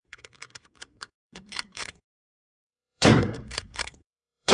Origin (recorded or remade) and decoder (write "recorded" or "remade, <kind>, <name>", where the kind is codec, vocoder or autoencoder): remade, codec, SNAC